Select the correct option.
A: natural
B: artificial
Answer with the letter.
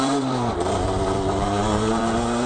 B